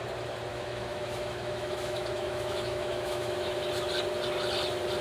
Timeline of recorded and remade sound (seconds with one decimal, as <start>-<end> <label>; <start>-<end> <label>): 0.0-0.5 recorded; 0.5-3.5 remade; 3.5-5.0 recorded